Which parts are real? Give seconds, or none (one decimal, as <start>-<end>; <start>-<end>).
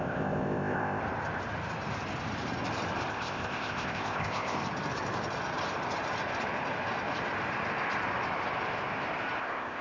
1.0-3.1; 4.6-9.4